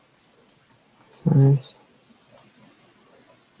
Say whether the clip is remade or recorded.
recorded